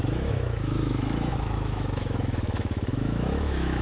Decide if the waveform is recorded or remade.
remade